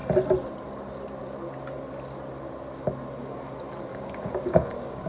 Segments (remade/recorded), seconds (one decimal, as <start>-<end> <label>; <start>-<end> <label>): 0.0-3.9 recorded; 3.9-5.1 remade